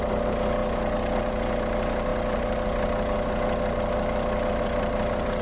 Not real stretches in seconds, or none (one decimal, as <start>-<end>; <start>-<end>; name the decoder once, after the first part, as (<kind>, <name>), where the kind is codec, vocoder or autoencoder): none